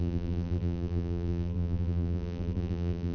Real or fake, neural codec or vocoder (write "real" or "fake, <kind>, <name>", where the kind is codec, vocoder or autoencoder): fake, vocoder, BigVGAN v2